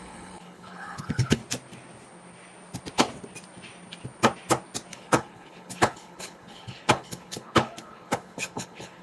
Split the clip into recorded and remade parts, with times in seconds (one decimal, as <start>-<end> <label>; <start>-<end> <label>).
0.0-1.4 remade; 1.4-4.9 recorded; 4.9-9.0 remade